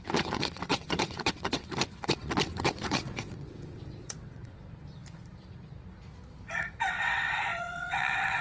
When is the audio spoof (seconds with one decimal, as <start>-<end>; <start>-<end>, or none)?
0.0-4.6; 6.6-8.4